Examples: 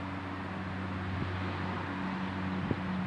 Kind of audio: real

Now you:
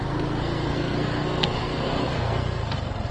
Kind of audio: fake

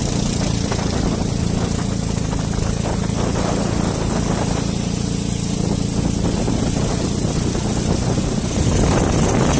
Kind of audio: real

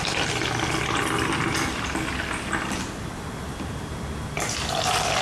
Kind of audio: real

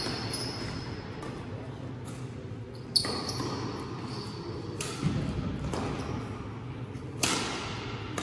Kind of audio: real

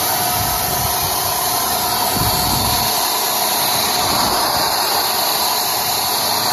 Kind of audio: real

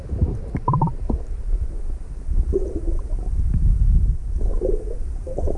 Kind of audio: fake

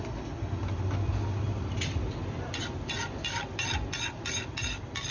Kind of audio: real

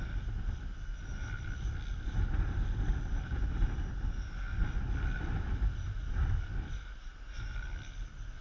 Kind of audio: real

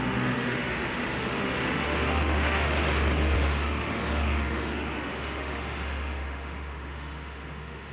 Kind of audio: fake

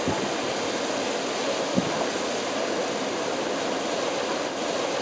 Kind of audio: real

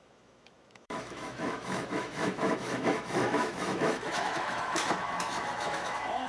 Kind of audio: fake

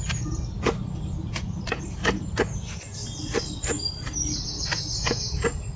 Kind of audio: real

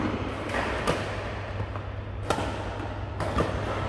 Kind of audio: real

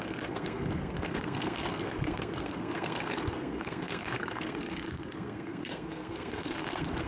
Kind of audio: fake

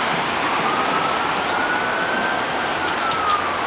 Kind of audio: real